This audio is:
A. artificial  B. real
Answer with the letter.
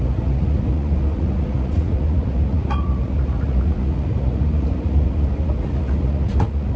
A